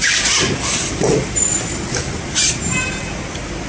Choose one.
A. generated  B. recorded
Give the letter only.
B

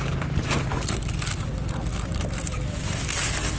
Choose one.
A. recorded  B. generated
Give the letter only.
A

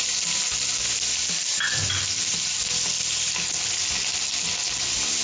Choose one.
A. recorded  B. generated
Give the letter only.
A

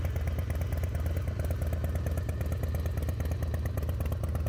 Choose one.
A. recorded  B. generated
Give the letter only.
A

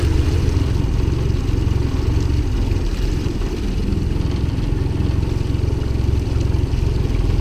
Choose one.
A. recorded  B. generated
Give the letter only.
A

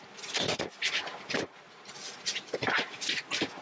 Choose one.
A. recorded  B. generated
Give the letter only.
A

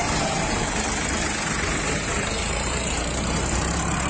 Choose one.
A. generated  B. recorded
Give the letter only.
A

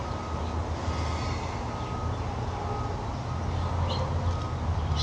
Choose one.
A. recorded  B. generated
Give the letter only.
A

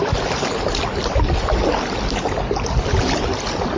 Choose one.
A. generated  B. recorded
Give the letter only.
B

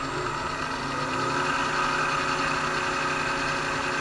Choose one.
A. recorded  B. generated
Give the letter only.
A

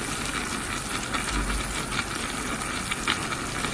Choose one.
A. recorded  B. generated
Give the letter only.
A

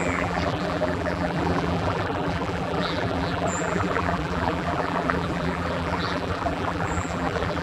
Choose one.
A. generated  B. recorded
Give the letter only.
A